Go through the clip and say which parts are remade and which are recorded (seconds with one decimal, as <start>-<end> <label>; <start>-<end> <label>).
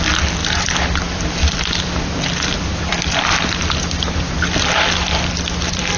0.0-6.0 remade